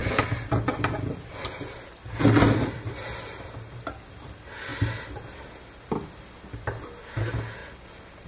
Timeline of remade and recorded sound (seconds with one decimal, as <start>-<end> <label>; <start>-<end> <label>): 0.0-1.3 remade; 1.3-8.3 recorded

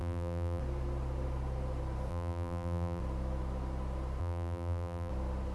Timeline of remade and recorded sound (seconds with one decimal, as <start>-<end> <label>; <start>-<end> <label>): 0.0-0.6 remade; 0.6-2.1 recorded; 2.1-3.0 remade; 3.0-4.2 recorded; 4.2-5.1 remade; 5.1-5.5 recorded

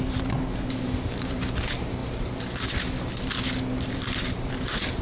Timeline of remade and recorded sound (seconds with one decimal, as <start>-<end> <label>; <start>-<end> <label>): 0.0-2.0 remade; 2.0-3.9 recorded; 3.9-5.0 remade